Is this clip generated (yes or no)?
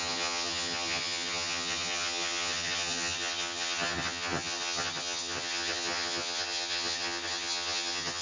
yes